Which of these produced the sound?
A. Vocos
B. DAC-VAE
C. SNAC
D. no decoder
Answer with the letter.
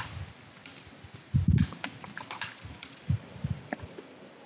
D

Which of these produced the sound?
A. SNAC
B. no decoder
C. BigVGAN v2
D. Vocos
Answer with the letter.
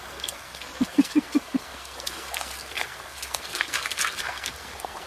A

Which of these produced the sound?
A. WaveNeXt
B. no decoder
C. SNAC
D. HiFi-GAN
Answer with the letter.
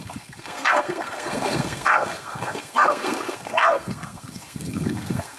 C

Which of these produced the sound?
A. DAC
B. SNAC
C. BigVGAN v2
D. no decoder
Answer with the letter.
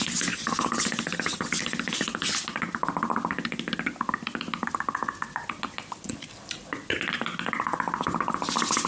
D